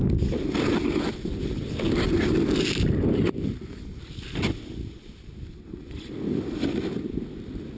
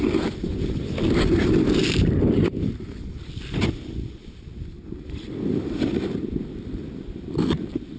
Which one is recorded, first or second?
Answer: first